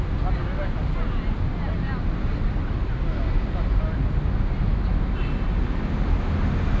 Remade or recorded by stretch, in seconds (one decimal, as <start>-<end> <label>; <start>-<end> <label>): 0.0-6.8 recorded